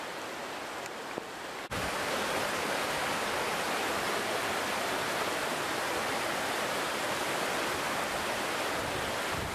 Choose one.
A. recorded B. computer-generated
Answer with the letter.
A